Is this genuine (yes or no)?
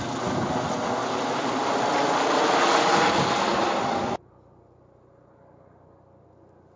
yes